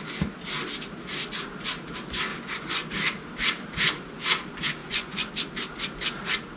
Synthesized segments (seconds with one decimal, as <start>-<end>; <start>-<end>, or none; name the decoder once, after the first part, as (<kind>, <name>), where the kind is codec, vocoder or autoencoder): 2.3-2.9 (vocoder, Vocos); 4.8-5.3